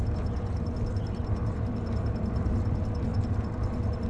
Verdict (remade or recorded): recorded